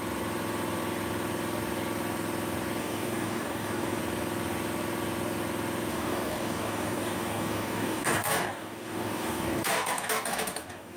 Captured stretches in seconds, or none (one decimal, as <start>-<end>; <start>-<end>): 0.0-2.8; 4.0-5.9